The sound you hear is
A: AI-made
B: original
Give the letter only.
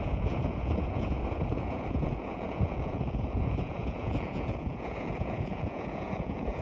A